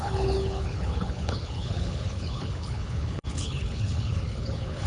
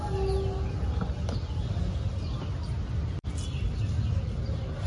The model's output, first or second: first